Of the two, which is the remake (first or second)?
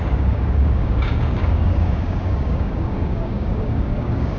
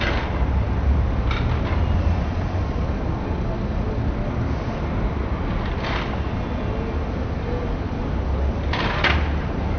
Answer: first